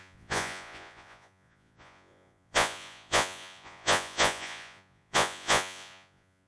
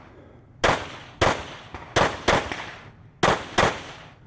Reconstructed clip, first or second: first